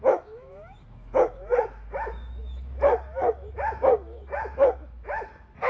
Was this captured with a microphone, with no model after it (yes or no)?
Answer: no